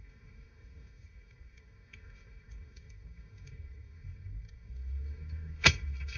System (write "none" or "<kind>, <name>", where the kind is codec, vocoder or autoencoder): codec, DAC